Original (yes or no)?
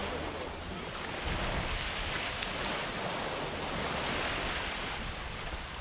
yes